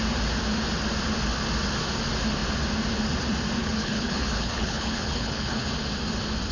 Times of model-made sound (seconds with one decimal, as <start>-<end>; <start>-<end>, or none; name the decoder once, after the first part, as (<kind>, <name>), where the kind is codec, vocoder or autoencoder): 3.6-5.7 (codec, HILCodec)